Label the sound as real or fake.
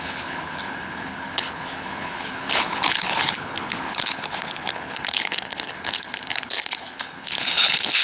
fake